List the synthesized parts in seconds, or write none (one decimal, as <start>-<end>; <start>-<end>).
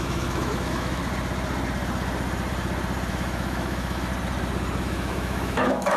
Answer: 0.0-1.0; 3.1-4.1; 4.8-6.0